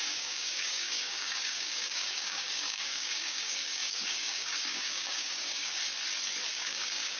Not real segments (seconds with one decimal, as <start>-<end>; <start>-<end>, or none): 0.0-5.8; 6.5-7.2